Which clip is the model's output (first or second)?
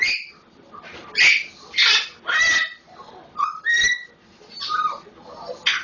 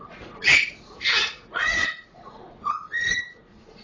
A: second